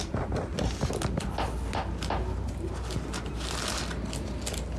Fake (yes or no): no